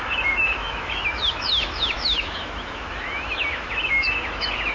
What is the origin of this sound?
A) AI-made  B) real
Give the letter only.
A